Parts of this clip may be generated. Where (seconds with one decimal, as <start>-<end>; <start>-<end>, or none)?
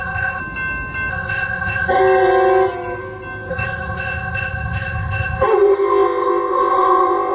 0.0-0.4; 1.1-2.0; 3.5-7.3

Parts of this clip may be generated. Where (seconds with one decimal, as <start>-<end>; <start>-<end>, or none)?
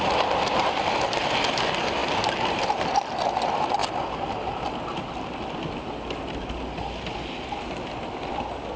none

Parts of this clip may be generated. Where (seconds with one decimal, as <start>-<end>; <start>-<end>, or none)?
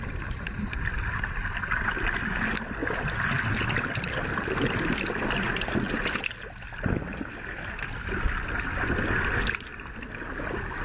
none